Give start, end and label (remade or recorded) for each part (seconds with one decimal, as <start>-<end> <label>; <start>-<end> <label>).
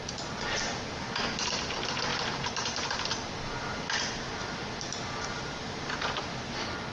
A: 0.0-6.9 recorded